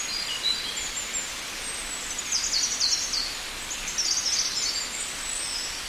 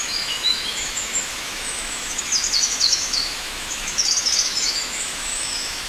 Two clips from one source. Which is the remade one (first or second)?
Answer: second